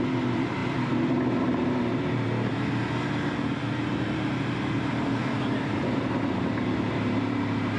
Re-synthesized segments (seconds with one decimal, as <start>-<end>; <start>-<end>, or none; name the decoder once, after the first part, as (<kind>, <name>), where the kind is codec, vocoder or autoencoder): 0.0-2.5 (vocoder, BigVGAN v2); 3.9-7.8